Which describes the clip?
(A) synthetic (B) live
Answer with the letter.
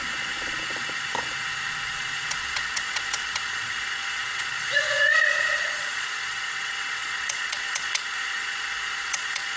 A